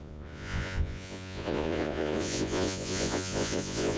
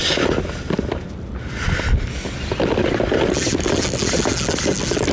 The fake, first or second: first